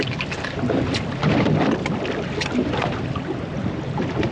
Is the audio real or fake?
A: real